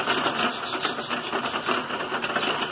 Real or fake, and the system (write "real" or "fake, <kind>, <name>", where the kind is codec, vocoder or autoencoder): real